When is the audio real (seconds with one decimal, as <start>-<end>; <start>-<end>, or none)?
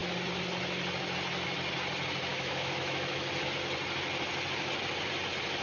0.0-2.3; 3.3-5.6